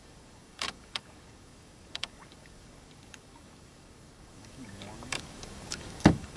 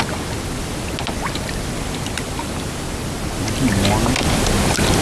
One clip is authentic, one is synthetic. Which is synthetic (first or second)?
first